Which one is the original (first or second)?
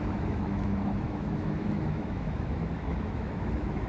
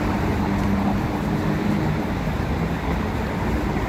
second